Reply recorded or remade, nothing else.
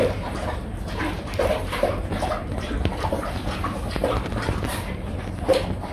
remade